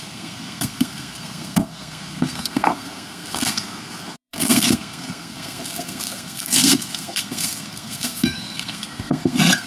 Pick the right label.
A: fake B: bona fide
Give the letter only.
A